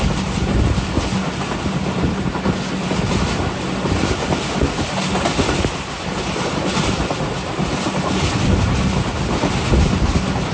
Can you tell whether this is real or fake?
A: real